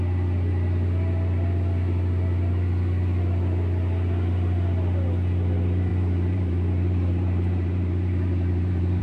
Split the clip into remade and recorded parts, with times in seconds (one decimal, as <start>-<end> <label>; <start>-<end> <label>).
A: 0.0-5.9 recorded; 5.9-9.0 remade

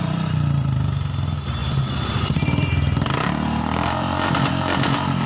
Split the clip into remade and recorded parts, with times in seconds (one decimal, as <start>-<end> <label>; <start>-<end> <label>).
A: 0.0-5.3 remade

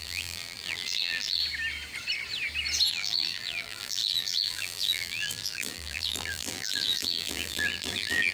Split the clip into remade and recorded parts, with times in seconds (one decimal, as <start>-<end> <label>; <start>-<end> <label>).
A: 0.0-1.4 remade; 1.4-2.9 recorded; 2.9-8.3 remade

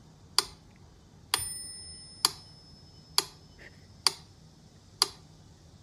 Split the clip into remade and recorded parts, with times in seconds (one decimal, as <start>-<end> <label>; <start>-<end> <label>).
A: 0.0-5.8 recorded